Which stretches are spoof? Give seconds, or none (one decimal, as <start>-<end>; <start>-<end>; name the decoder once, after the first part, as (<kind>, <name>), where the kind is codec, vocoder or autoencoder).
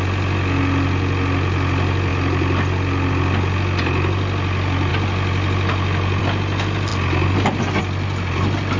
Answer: none